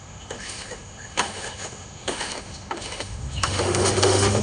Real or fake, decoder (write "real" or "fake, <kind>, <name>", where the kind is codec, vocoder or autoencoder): fake, autoencoder, DAC-VAE